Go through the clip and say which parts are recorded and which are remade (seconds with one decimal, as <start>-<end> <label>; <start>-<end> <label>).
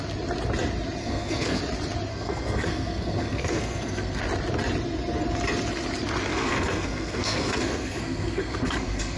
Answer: 0.0-1.0 recorded; 1.0-1.6 remade; 1.6-2.1 recorded; 2.1-4.2 remade; 4.2-6.3 recorded; 6.3-9.2 remade